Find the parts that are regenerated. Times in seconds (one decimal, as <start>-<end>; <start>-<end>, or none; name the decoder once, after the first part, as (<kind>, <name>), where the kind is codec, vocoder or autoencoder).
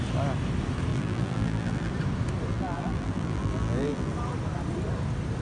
0.9-1.9 (vocoder, BigVGAN v2); 2.5-4.1